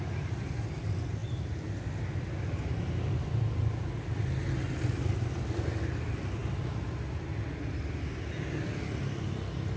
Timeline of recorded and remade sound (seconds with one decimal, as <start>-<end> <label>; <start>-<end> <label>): 0.0-9.8 recorded